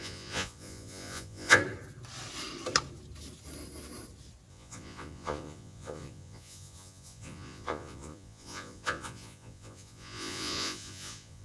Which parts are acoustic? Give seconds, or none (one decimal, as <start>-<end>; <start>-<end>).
1.6-4.5